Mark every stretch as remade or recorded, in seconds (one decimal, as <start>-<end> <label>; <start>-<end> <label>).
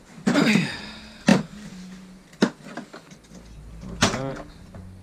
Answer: 0.0-5.0 recorded